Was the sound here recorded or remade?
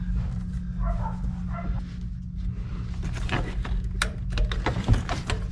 recorded